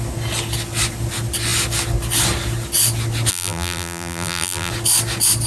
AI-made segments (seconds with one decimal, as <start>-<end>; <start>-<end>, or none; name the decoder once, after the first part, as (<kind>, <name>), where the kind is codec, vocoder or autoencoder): 3.3-4.7 (vocoder, BigVGAN v2)